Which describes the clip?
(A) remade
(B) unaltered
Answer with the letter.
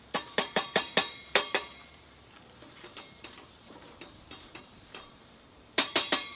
A